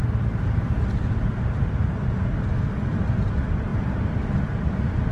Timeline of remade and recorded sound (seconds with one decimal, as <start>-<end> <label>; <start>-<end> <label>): 0.0-5.1 recorded